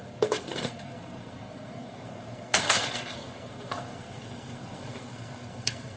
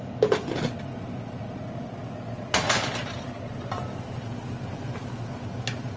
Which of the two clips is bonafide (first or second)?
second